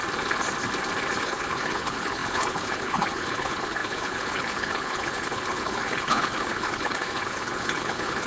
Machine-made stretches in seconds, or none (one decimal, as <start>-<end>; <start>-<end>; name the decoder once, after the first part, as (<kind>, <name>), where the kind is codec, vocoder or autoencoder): 1.2-8.3 (codec, HILCodec)